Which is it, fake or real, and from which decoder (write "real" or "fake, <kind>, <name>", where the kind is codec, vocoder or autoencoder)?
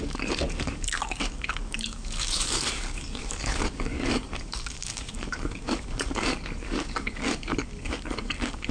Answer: fake, codec, DAC